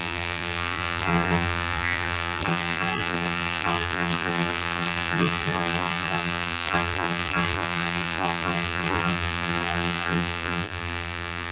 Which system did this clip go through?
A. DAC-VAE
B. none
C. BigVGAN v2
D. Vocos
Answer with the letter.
C